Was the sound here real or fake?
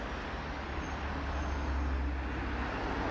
real